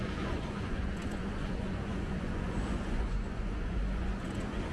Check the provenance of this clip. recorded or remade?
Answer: remade